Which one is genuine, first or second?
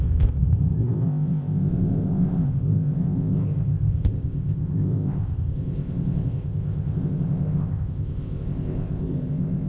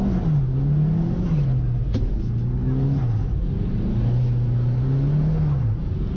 second